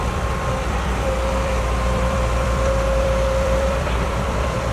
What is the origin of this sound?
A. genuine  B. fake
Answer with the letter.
B